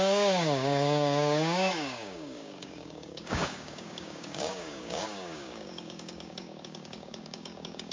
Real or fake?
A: fake